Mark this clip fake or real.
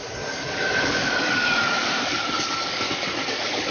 fake